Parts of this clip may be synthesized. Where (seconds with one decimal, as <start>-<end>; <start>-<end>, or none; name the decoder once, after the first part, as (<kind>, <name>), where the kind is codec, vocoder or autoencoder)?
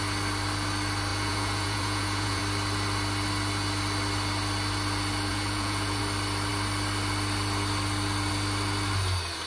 1.1-2.4 (vocoder, Vocos); 5.3-6.0